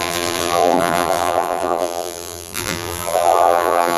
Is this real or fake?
fake